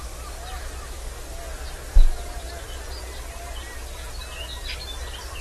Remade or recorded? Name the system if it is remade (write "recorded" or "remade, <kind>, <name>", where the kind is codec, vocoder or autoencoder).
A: recorded